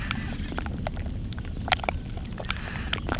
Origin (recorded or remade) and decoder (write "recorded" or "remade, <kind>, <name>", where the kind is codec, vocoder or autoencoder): recorded